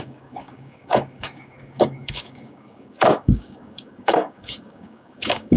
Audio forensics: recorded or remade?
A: remade